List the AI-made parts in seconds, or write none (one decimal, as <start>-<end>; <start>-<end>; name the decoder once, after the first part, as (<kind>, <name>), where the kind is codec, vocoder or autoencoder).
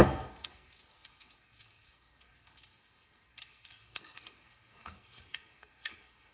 0.0-6.3 (codec, SNAC)